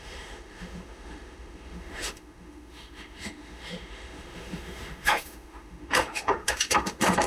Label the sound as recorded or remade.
remade